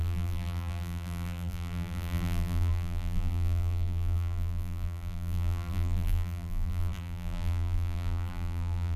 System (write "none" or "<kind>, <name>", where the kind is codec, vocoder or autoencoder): vocoder, BigVGAN v2